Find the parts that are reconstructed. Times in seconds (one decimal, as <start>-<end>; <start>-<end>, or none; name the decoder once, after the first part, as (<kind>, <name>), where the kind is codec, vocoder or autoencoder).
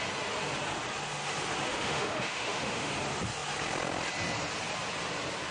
1.7-2.9 (autoencoder, DAC-VAE)